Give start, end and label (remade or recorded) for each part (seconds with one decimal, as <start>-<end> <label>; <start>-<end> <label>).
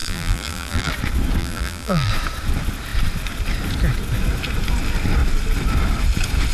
0.0-0.9 remade; 0.9-1.4 recorded; 1.4-2.1 remade; 2.1-6.5 recorded